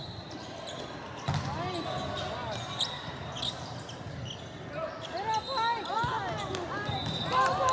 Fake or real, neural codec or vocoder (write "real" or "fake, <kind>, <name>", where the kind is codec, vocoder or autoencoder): real